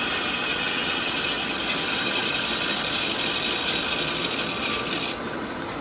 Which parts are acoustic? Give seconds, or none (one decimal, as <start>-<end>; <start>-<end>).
0.0-0.5; 1.1-5.8

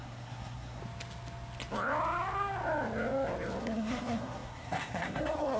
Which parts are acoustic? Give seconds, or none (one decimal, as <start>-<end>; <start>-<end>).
0.8-3.6

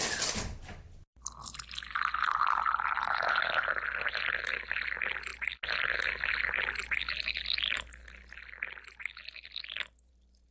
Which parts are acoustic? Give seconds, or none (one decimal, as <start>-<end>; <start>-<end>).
0.0-10.5